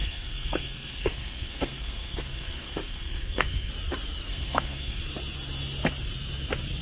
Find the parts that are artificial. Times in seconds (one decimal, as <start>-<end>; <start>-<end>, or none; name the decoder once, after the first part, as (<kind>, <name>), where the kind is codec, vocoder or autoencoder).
0.0-3.7 (codec, SNAC); 4.3-5.0